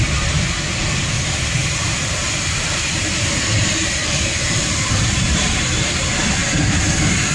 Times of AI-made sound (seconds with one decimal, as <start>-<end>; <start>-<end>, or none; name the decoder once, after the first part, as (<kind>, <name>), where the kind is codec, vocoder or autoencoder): 1.6-6.0 (vocoder, BigVGAN v2); 6.4-7.3